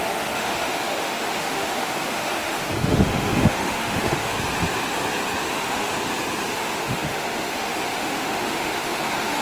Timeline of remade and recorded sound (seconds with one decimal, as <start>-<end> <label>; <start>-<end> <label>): 0.0-4.3 remade; 4.3-5.5 recorded; 5.5-5.9 remade; 5.9-6.5 recorded; 6.5-9.4 remade